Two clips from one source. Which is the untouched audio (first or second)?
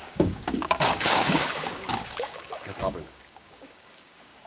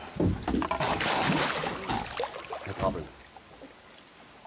second